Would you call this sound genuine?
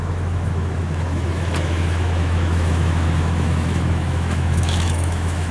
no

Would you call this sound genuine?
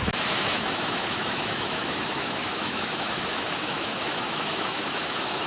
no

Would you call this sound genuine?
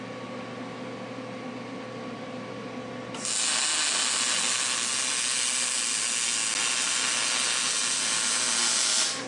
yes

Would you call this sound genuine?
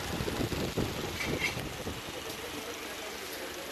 yes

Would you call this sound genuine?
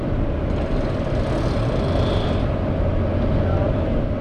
yes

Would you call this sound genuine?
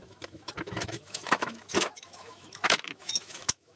no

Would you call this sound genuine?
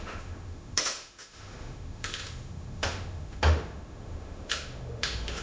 no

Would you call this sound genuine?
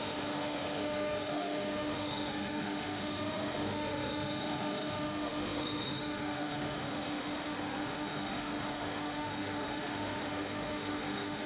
no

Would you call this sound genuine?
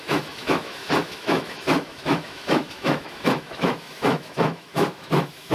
no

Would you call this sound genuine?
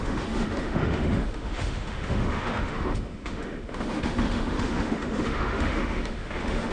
no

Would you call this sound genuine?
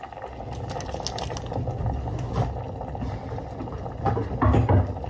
yes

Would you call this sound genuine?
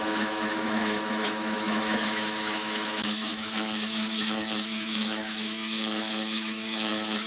no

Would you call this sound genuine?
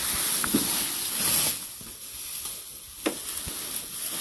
yes